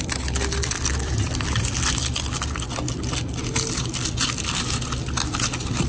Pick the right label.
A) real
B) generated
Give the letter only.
A